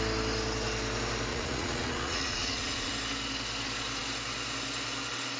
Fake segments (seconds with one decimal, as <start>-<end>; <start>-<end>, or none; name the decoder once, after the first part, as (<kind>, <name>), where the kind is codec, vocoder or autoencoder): 1.3-2.9 (vocoder, Vocos)